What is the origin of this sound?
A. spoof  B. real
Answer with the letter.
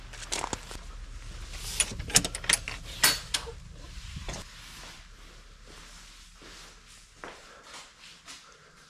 B